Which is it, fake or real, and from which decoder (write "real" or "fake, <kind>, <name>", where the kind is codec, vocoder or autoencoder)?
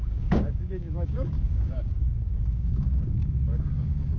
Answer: fake, codec, DAC